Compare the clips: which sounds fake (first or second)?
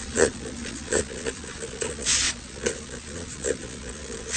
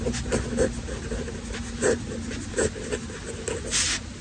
first